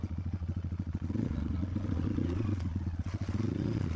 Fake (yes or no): yes